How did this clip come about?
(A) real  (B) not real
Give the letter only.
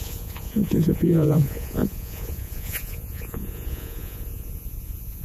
B